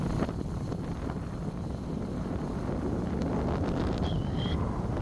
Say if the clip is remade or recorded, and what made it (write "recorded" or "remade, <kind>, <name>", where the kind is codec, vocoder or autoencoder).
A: recorded